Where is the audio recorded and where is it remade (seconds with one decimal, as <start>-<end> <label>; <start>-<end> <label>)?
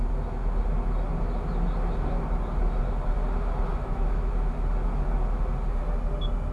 0.0-3.7 recorded; 3.7-4.3 remade; 4.3-6.5 recorded